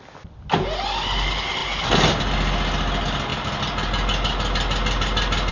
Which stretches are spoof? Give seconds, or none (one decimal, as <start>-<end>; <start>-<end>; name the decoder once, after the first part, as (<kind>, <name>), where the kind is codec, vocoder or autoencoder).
none